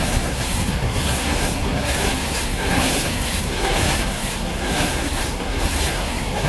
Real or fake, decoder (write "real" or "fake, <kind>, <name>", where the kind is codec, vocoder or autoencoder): fake, codec, SNAC